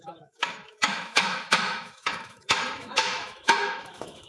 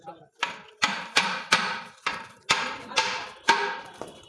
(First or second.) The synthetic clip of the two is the first